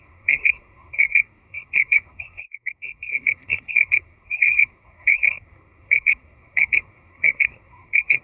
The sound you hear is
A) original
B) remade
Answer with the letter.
B